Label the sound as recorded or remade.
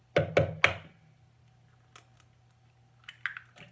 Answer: recorded